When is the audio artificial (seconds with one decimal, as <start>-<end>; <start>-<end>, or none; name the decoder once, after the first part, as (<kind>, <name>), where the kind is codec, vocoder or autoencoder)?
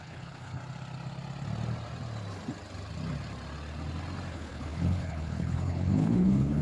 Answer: 0.0-0.6 (codec, HILCodec); 4.3-6.6